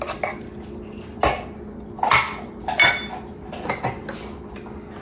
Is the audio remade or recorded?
recorded